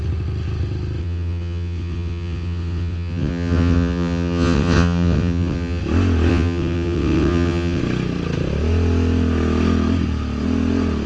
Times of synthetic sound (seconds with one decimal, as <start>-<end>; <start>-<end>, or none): 1.0-5.8; 6.3-7.8